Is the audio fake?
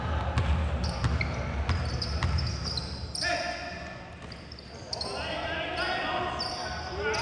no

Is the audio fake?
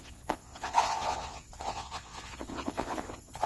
yes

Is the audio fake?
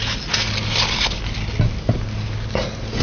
no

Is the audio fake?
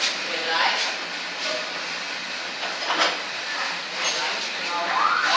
no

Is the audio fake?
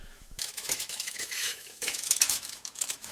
yes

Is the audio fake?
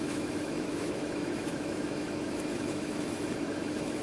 yes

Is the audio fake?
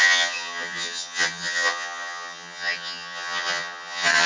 yes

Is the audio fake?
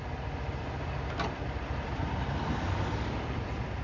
yes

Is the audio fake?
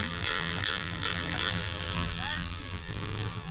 yes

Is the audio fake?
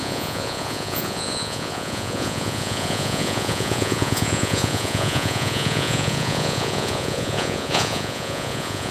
yes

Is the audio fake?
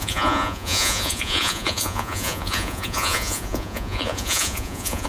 yes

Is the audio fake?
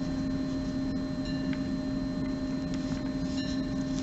no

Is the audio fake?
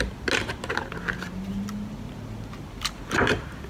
no